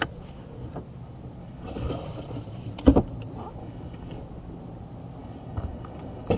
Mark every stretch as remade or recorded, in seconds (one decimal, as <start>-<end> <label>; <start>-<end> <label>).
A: 0.0-1.4 recorded; 1.4-1.9 remade; 1.9-3.6 recorded; 3.6-4.2 remade; 4.2-5.2 recorded; 5.2-6.4 remade